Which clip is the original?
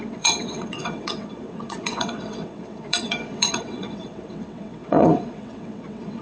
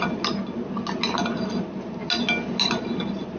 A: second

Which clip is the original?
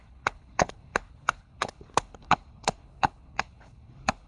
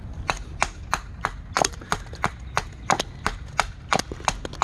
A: second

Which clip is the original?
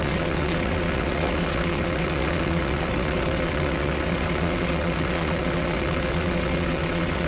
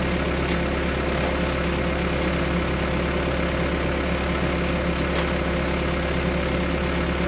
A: second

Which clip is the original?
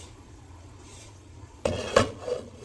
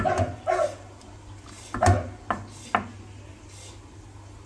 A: second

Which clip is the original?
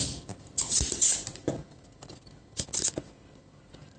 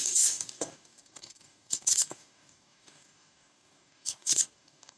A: first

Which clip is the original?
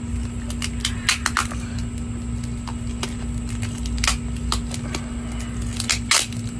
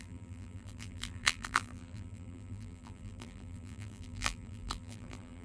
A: first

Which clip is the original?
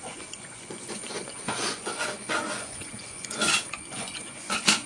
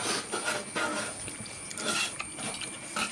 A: second